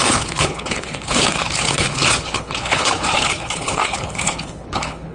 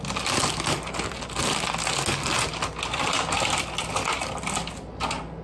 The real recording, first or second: second